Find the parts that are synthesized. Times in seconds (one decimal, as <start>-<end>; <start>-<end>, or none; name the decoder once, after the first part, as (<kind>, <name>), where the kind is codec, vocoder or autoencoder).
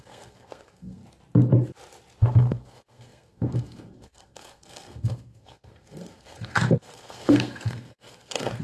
0.0-1.0 (codec, SNAC); 2.2-8.6